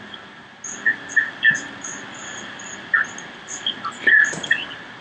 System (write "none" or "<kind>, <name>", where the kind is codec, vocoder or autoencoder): none